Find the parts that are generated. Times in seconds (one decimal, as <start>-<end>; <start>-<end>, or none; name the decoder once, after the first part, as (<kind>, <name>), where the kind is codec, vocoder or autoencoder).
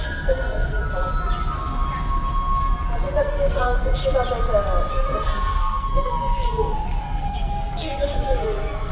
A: 0.0-0.8 (codec, SNAC); 3.2-4.0; 4.9-8.9